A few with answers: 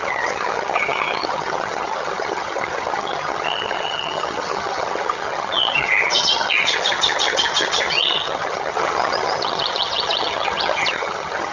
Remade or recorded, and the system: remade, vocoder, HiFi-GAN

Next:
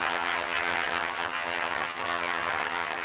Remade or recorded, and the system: remade, vocoder, HiFi-GAN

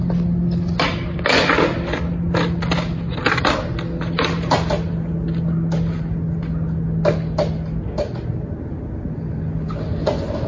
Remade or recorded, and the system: recorded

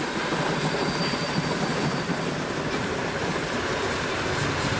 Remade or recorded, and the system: recorded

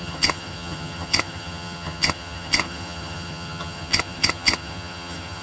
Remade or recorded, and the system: remade, vocoder, HiFi-GAN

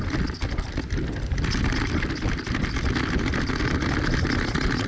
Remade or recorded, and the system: recorded